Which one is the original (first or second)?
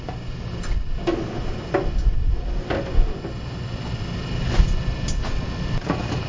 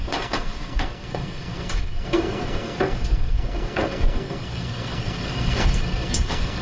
first